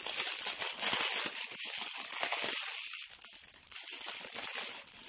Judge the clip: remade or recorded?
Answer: recorded